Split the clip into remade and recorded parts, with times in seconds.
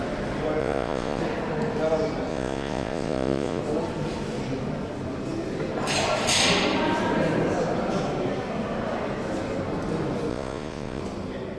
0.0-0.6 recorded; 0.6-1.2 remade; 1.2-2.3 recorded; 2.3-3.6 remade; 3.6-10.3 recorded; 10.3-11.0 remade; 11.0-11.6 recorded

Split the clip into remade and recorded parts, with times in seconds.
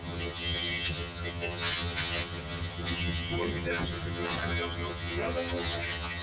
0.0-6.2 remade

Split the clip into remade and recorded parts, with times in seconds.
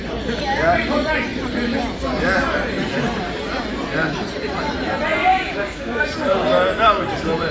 0.0-5.2 recorded; 5.2-6.0 remade; 6.0-7.5 recorded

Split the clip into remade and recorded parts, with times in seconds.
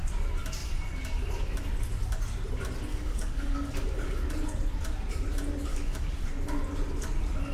0.0-2.9 recorded; 2.9-4.2 remade; 4.2-5.7 recorded; 5.7-6.2 remade; 6.2-7.5 recorded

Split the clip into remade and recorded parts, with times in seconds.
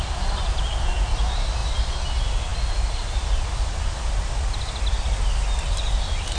0.0-6.4 recorded